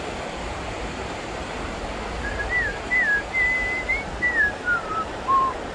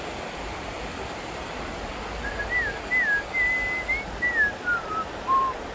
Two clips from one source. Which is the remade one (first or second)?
first